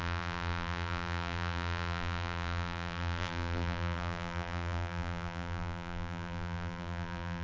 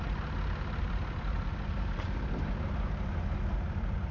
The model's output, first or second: first